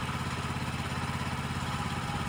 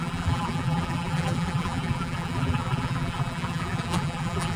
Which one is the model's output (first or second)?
second